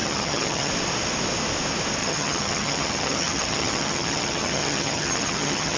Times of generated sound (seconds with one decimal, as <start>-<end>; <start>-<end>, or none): 0.0-0.7; 2.0-5.8